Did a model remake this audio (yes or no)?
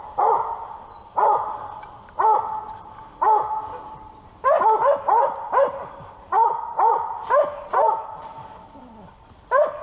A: no